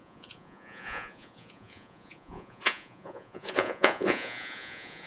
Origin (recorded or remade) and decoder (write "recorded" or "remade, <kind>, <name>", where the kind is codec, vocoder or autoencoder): remade, vocoder, Vocos